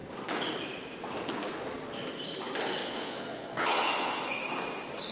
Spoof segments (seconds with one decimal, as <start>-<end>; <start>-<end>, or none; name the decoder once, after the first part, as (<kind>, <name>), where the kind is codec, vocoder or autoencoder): 2.8-4.2 (vocoder, Vocos)